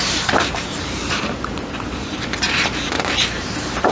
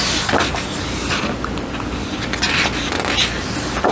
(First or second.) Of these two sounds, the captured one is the second